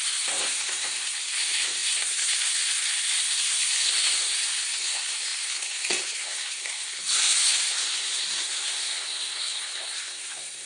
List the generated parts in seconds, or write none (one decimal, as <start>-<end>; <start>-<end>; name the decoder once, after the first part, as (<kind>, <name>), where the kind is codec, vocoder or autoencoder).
0.0-10.7 (codec, SNAC)